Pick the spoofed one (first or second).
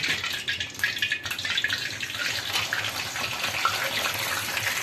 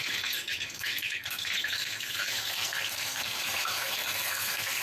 second